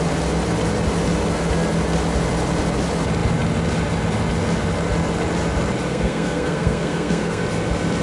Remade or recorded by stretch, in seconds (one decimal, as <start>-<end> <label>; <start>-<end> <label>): 0.0-5.9 recorded; 5.9-7.4 remade; 7.4-8.0 recorded